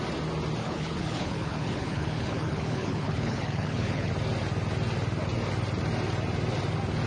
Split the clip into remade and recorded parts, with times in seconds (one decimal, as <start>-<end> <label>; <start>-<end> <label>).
0.0-0.6 recorded; 0.6-4.1 remade; 4.1-7.1 recorded

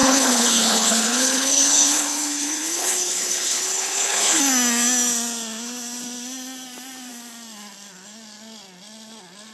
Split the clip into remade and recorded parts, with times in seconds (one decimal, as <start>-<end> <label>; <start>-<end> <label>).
0.0-4.4 remade; 4.4-9.5 recorded

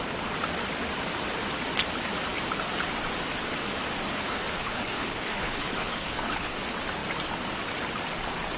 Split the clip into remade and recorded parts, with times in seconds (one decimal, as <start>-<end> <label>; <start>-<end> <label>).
0.0-4.1 recorded; 4.1-6.5 remade; 6.5-8.6 recorded

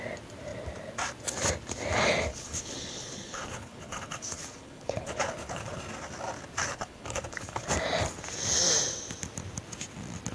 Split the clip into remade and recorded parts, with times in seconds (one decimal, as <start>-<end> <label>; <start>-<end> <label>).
0.0-2.3 recorded; 2.3-5.8 remade; 5.8-6.6 recorded; 6.6-7.7 remade; 7.7-10.3 recorded

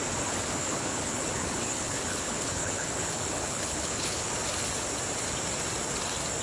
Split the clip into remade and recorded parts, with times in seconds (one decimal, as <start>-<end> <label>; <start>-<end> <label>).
0.0-0.5 recorded; 0.5-4.3 remade; 4.3-6.4 recorded

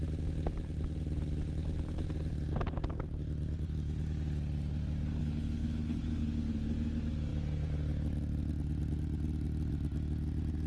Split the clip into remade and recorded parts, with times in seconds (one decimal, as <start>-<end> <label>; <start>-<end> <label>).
0.0-5.2 recorded; 5.2-6.0 remade; 6.0-10.7 recorded

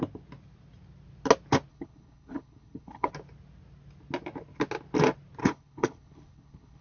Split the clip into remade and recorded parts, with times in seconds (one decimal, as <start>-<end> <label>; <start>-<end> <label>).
0.0-1.7 recorded; 1.7-3.1 remade; 3.1-5.4 recorded; 5.4-6.8 remade

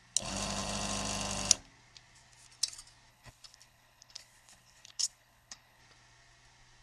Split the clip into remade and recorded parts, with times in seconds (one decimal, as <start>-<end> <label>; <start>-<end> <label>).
0.0-3.1 recorded; 3.1-5.8 remade; 5.8-6.8 recorded